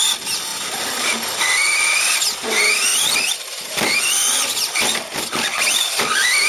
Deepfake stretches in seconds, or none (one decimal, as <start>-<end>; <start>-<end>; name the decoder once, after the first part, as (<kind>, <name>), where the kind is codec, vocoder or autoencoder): 0.5-2.0 (vocoder, BigVGAN v2); 2.9-5.6